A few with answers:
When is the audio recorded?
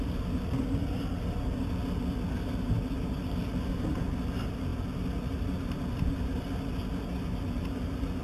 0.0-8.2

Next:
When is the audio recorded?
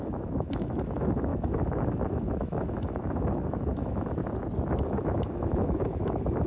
4.2-4.8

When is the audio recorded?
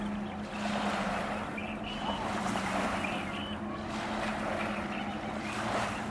0.0-6.1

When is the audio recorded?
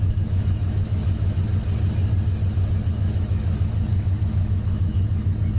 1.5-2.9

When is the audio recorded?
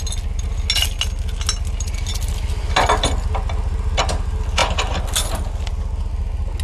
0.0-6.6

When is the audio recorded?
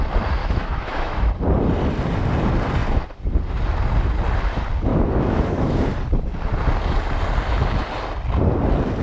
0.0-0.4; 1.3-4.9; 5.8-9.0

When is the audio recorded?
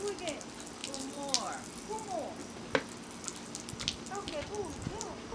0.0-5.3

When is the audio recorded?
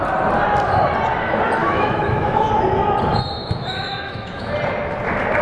0.0-1.6; 2.5-3.4; 4.5-5.4